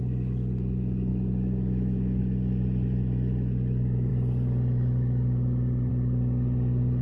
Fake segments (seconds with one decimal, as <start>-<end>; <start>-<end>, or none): 1.1-2.2